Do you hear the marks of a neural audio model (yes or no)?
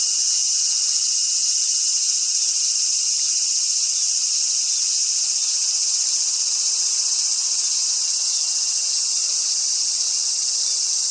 no